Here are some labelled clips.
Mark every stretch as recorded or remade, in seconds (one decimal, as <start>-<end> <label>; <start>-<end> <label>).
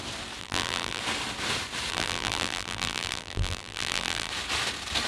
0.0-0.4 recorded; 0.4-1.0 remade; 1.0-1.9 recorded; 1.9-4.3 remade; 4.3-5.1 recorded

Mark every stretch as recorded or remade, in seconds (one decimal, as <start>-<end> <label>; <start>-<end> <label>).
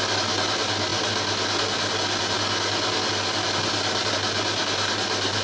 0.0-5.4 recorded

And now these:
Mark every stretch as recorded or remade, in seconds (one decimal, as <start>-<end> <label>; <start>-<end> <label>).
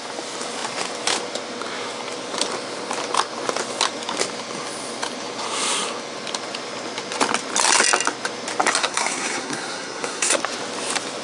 0.0-8.8 recorded; 8.8-10.4 remade; 10.4-11.2 recorded